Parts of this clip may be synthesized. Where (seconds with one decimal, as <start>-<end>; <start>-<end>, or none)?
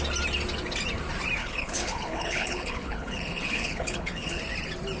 1.4-4.4